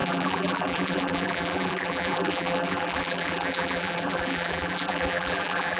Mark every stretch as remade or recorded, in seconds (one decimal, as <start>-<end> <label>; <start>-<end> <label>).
0.0-5.8 remade

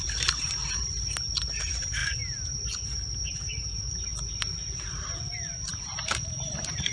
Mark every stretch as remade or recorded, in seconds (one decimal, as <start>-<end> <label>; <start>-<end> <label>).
0.0-4.1 remade; 4.1-5.7 recorded; 5.7-6.9 remade

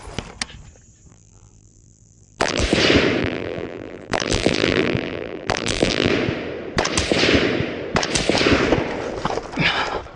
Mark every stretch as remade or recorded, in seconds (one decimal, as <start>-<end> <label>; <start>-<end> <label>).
0.0-1.1 recorded; 1.1-2.6 remade; 2.6-3.2 recorded; 3.2-6.1 remade; 6.1-10.2 recorded

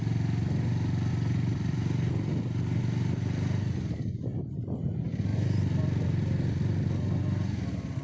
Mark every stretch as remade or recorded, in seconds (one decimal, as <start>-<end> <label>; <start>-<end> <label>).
0.0-1.1 recorded; 1.1-2.4 remade; 2.4-5.3 recorded; 5.3-6.9 remade; 6.9-8.0 recorded

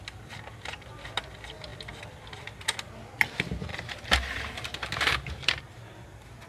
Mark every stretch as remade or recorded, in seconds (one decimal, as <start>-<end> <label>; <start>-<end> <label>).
0.0-3.7 recorded; 3.7-5.6 remade; 5.6-6.5 recorded

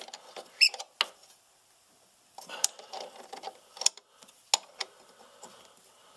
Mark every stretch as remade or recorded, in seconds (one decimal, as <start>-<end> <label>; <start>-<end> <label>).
0.0-1.2 recorded; 1.2-3.9 remade; 3.9-6.2 recorded